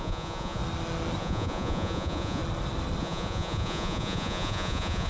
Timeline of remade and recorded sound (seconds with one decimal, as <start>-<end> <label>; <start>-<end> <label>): 0.0-0.6 remade; 0.6-1.2 recorded; 1.2-2.4 remade; 2.4-3.0 recorded; 3.0-5.1 remade